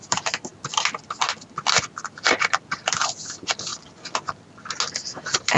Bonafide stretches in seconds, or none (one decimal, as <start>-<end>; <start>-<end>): 3.7-5.1